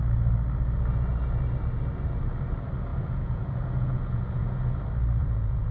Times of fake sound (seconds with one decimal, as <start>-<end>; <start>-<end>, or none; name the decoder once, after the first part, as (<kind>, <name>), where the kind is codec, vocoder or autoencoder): 2.9-4.8 (vocoder, Vocos); 5.2-5.7